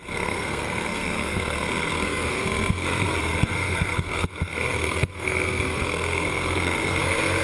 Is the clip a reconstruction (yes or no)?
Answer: yes